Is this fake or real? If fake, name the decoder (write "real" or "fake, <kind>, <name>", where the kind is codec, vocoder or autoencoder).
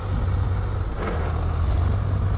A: real